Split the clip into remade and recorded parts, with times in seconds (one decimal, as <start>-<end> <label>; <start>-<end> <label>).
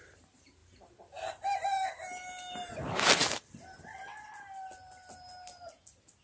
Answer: 0.0-6.2 recorded